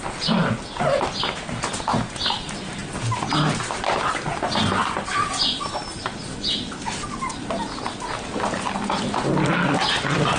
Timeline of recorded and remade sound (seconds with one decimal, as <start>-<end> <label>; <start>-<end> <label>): 0.0-10.4 recorded